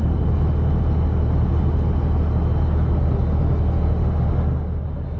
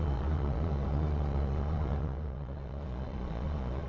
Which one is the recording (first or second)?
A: first